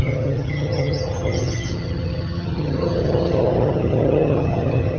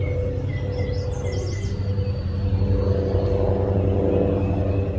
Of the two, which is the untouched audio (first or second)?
second